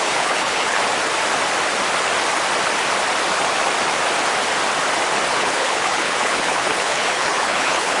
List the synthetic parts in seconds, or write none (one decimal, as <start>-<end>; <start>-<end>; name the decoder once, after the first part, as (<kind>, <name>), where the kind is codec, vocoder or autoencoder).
0.0-0.8 (codec, HILCodec); 5.3-8.0

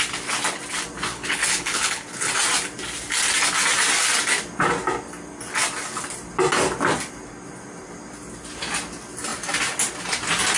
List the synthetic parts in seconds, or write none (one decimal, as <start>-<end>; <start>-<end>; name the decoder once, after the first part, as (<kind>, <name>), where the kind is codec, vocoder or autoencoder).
1.1-2.3 (codec, HILCodec)

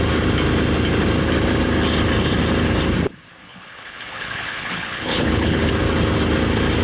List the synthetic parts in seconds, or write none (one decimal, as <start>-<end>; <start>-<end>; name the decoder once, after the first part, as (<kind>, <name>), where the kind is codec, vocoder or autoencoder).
3.4-5.7 (codec, HILCodec)

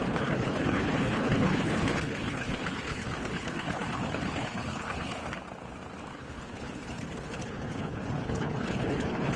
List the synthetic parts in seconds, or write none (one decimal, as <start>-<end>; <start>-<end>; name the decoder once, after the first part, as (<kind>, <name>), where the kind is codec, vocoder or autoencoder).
0.0-5.2 (codec, HILCodec); 6.1-9.4

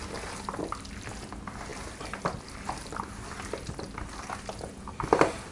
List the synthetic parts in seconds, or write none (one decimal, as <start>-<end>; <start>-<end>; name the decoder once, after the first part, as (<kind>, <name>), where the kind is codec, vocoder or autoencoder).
none